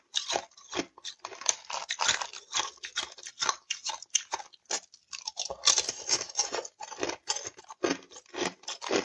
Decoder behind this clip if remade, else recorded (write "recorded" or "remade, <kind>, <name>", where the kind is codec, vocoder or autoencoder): recorded